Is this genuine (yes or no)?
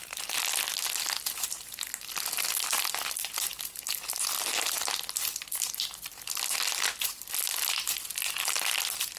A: yes